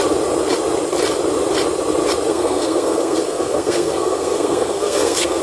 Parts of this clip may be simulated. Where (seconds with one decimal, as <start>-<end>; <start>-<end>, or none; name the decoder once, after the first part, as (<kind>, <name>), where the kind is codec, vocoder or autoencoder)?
2.3-5.4 (codec, SNAC)